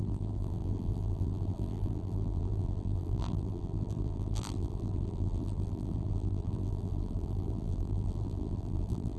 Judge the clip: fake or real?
fake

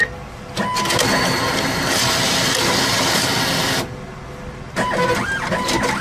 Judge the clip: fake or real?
real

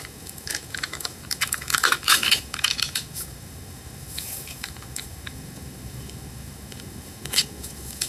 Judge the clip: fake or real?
fake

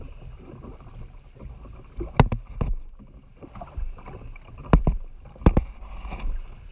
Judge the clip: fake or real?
real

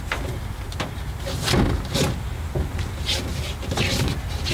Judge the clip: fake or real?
real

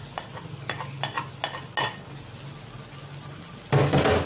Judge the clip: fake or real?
real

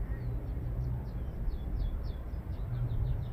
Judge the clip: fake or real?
fake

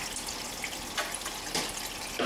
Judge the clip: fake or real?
real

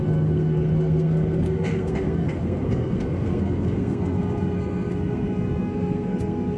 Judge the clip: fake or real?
fake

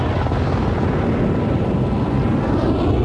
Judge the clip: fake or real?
real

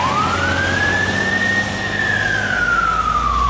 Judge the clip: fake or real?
real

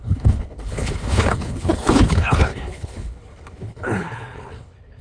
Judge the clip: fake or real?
fake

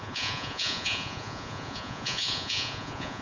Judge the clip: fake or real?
fake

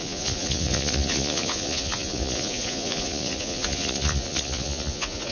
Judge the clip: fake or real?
fake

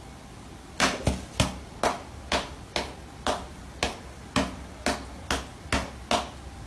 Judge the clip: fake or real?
real